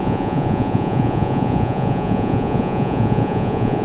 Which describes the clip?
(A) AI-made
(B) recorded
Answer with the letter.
A